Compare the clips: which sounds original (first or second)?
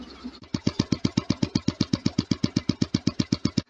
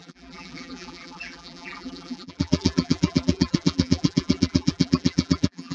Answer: first